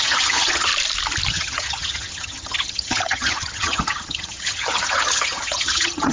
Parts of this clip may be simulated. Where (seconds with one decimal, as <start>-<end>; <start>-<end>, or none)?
0.0-0.7; 1.3-6.1

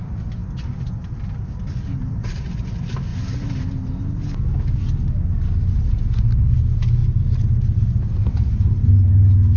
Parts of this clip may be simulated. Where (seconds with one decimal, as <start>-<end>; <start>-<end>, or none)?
none

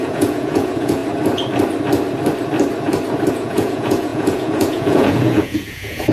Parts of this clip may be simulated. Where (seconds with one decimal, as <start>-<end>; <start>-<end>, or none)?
0.0-1.0; 3.3-6.1

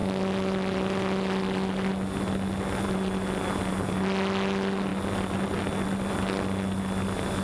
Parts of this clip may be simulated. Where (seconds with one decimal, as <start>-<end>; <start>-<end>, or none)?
none